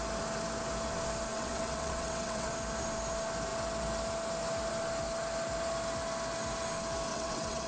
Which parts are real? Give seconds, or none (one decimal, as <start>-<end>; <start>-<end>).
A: 0.0-1.3; 2.5-7.1